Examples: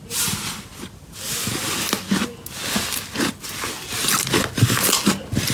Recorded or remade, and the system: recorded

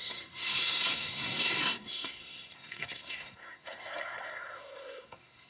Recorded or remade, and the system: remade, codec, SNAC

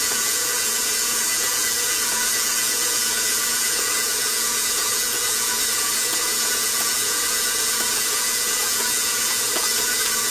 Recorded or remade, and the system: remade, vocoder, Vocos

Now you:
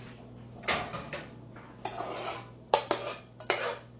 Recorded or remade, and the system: recorded